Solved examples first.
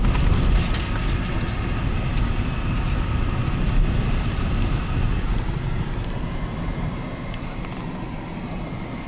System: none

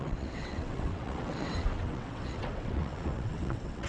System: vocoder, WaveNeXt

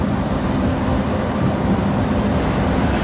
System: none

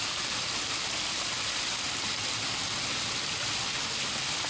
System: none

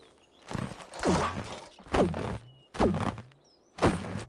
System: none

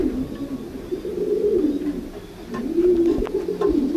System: none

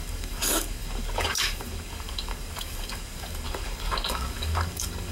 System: codec, DAC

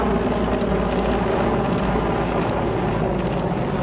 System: none